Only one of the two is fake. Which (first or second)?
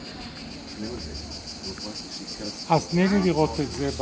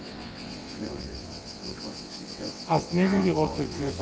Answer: second